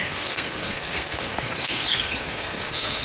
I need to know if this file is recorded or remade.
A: remade